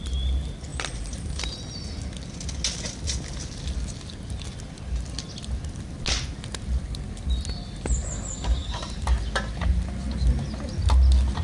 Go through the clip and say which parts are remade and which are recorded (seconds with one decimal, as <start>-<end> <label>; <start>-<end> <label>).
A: 0.0-0.7 recorded; 0.7-1.4 remade; 1.4-8.6 recorded; 8.6-9.2 remade; 9.2-11.4 recorded